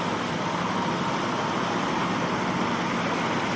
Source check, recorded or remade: recorded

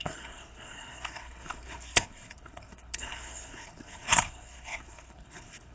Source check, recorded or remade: remade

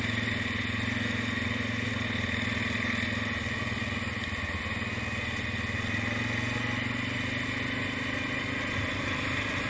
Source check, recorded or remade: recorded